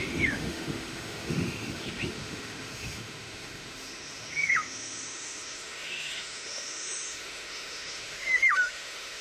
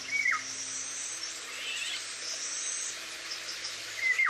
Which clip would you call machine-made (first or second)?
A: first